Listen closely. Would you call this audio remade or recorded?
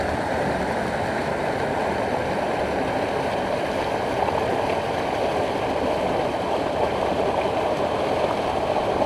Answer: recorded